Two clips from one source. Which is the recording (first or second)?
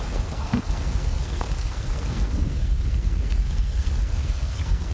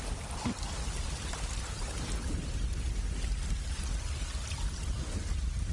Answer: second